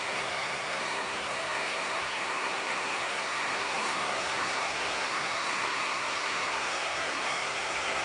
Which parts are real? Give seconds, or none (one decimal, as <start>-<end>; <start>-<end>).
none